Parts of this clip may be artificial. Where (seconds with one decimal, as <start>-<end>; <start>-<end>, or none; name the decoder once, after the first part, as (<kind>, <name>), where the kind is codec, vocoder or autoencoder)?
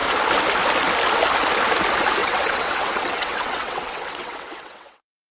2.2-5.3 (vocoder, WaveNeXt)